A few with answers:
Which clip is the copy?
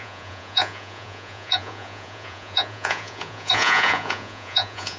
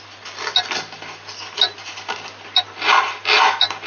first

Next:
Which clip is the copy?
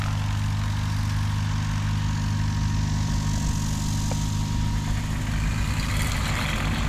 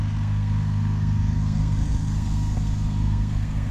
second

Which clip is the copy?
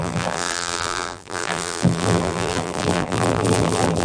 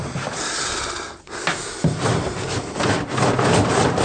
first